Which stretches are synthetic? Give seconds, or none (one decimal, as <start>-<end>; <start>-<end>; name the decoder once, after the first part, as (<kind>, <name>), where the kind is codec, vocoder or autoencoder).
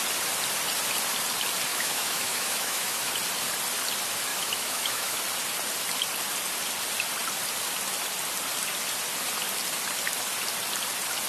1.7-3.1 (autoencoder, DAC-VAE); 4.3-5.2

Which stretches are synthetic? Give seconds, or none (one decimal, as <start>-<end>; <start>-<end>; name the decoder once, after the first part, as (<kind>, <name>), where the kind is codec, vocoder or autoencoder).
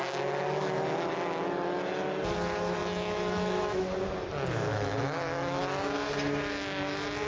2.8-3.8 (autoencoder, DAC-VAE); 4.7-5.6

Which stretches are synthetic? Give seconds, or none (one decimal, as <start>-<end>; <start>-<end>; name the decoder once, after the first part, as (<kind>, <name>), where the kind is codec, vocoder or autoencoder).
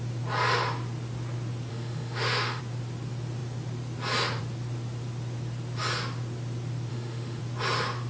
1.7-2.6 (autoencoder, DAC-VAE); 6.9-7.4